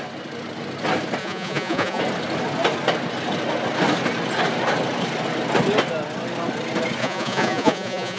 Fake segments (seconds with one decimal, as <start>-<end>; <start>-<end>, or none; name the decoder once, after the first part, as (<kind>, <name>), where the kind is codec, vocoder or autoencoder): 1.2-2.0 (vocoder, Vocos); 7.0-8.2

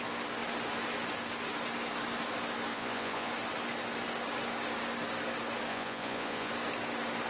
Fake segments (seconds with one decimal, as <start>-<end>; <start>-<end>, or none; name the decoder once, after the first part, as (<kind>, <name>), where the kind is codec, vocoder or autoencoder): 2.7-3.3 (vocoder, Vocos); 5.7-6.5